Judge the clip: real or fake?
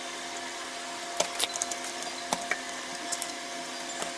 real